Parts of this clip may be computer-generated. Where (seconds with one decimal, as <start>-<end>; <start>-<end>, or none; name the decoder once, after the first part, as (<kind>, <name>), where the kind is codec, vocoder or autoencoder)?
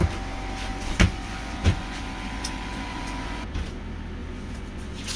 0.7-3.8 (vocoder, Vocos); 4.2-5.2